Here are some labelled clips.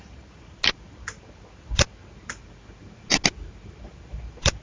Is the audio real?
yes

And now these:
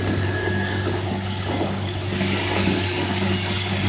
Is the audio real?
no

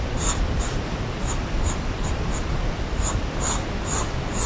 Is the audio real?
yes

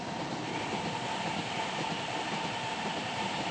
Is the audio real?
yes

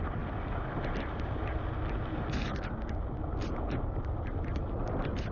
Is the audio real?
yes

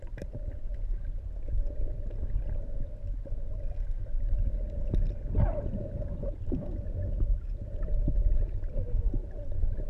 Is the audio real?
yes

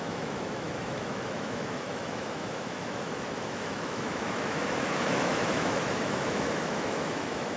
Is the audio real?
no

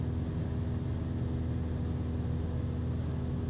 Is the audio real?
yes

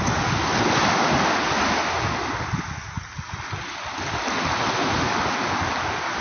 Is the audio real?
yes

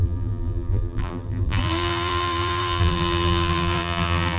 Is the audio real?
no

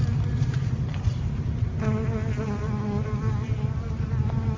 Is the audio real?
yes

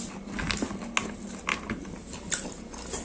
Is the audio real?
yes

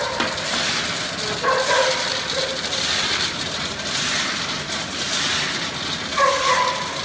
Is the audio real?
yes